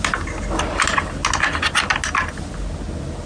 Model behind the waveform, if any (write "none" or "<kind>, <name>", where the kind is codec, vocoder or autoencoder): none